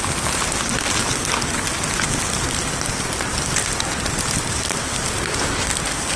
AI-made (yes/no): no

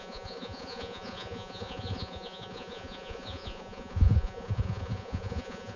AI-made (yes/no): yes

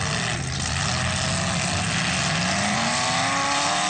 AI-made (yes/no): no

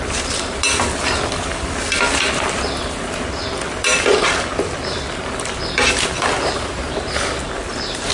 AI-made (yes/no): no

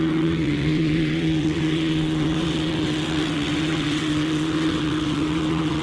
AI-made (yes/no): yes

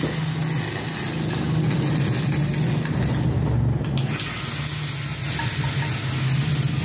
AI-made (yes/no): no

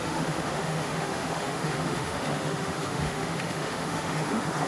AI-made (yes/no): yes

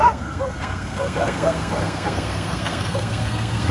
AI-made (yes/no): yes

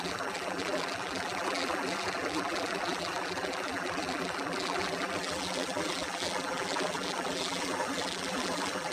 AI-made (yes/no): yes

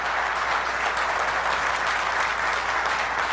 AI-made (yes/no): no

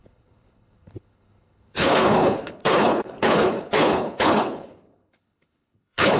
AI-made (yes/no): yes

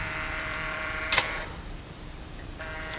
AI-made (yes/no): yes